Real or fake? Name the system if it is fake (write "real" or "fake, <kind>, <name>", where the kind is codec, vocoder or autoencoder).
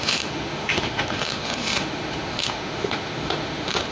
fake, autoencoder, DAC-VAE